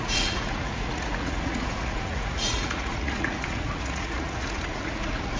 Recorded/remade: remade